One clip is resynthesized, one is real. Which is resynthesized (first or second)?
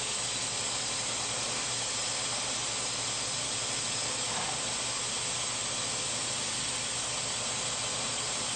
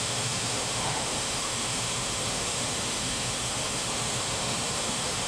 second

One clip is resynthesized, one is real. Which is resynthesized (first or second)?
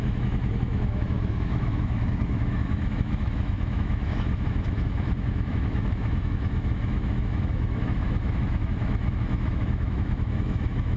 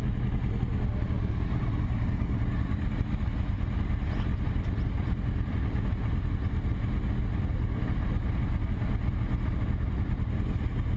first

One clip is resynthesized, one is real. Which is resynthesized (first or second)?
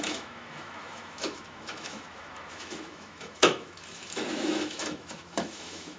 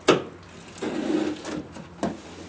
first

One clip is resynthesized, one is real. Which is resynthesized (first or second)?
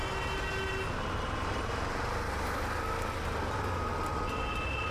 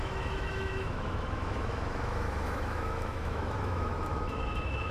second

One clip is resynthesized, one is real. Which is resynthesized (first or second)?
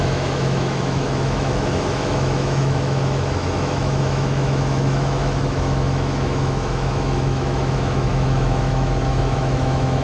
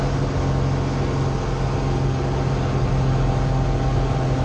first